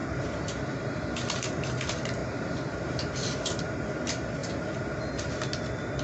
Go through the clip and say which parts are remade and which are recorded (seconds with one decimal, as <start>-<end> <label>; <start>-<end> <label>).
0.0-1.0 remade; 1.0-2.2 recorded; 2.2-3.6 remade; 3.6-6.0 recorded